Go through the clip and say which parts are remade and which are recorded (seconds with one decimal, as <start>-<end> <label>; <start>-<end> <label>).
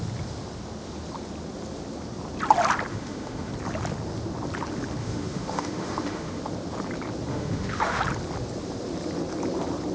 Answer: 0.0-2.9 recorded; 2.9-3.5 remade; 3.5-5.0 recorded; 5.0-6.4 remade; 6.4-7.3 recorded; 7.3-8.0 remade; 8.0-9.9 recorded